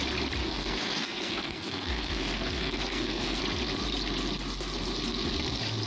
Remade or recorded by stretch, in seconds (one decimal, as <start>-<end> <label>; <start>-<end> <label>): 0.0-0.4 recorded; 0.4-3.4 remade; 3.4-5.9 recorded